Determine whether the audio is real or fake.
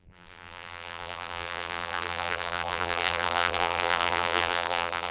fake